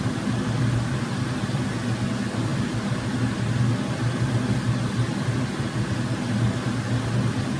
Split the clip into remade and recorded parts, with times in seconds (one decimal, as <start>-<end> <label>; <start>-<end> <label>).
0.0-7.6 recorded